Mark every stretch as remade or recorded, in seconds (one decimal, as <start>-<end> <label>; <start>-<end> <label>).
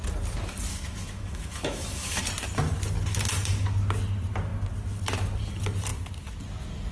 0.0-0.7 recorded; 0.7-2.2 remade; 2.2-6.9 recorded